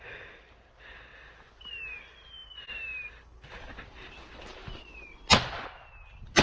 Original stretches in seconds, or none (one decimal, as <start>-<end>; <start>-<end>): 0.0-6.4

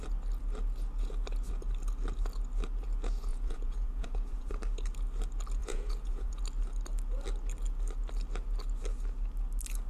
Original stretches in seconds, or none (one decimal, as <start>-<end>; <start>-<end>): 0.0-3.3; 4.5-5.6; 6.4-9.9

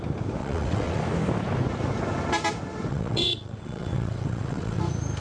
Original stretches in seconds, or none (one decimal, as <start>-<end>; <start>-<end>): 0.0-0.4; 1.0-2.9; 4.8-5.2

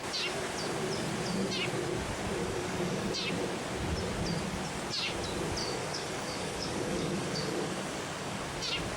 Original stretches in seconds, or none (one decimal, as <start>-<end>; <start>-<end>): 0.0-2.4; 3.1-5.6; 8.4-9.0

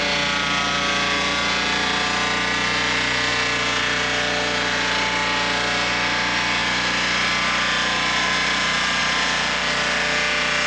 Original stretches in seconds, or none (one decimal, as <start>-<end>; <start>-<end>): 0.0-10.7

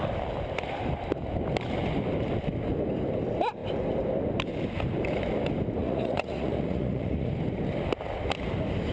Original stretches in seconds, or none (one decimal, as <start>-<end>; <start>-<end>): 0.0-5.8; 7.3-8.9